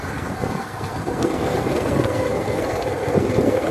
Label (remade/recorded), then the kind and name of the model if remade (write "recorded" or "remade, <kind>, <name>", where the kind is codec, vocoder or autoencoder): remade, codec, SNAC